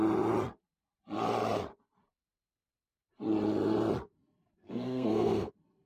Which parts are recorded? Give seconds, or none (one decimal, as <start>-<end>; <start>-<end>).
0.0-4.6; 5.5-5.9